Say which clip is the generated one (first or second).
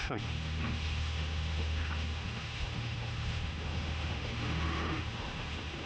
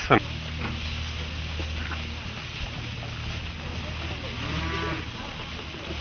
first